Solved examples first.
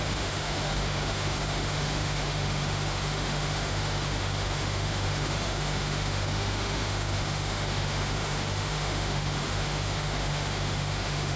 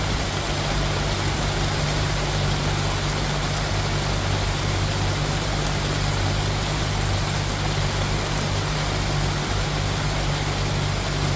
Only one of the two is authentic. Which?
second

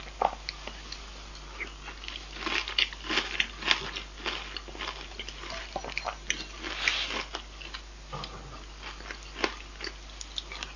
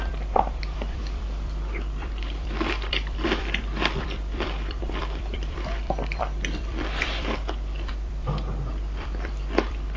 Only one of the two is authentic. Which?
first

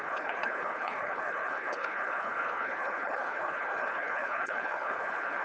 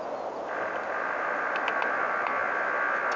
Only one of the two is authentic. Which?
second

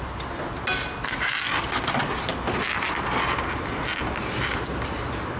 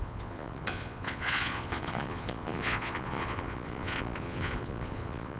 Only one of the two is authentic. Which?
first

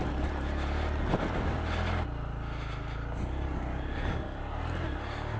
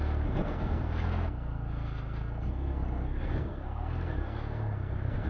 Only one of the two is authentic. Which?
first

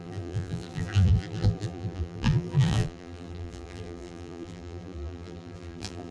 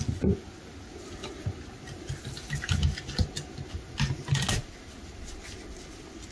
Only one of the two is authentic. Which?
second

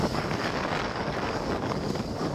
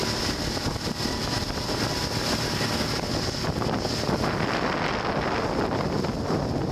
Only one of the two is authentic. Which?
second